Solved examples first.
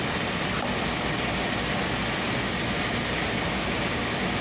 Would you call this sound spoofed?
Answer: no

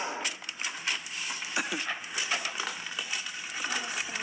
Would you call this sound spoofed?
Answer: yes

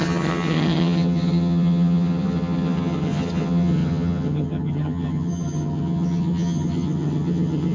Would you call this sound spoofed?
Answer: yes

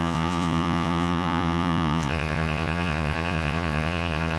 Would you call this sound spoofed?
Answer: yes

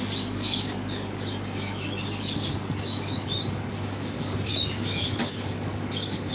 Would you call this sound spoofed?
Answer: yes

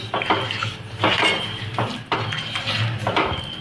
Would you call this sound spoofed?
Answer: no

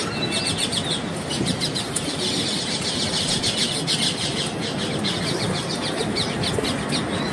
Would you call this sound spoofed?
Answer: no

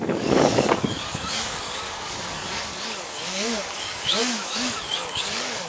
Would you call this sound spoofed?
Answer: yes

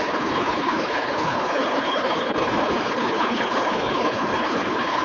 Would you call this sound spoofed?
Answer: yes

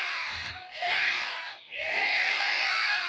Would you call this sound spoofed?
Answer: yes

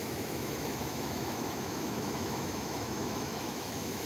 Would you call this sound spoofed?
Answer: yes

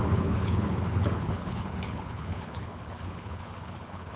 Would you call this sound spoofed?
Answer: yes